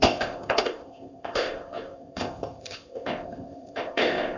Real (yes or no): no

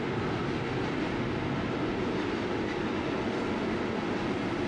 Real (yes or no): yes